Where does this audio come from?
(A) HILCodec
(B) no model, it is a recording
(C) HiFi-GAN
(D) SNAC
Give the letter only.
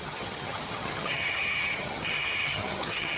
C